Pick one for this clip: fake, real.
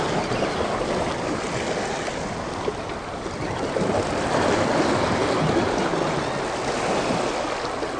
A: real